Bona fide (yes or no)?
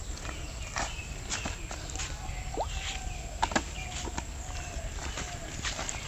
yes